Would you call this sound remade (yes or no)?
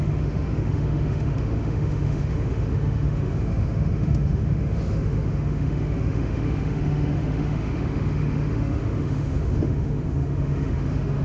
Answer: yes